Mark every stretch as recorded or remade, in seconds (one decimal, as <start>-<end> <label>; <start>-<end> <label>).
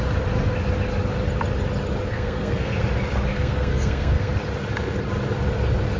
0.0-2.1 recorded; 2.1-2.8 remade; 2.8-3.3 recorded; 3.3-4.3 remade; 4.3-6.0 recorded